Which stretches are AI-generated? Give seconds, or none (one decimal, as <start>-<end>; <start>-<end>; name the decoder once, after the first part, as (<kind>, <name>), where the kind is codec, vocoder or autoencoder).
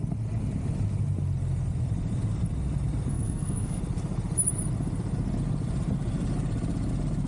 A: 3.1-3.8 (codec, SNAC)